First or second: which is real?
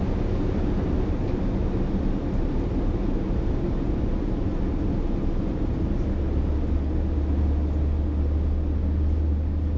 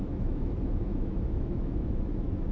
first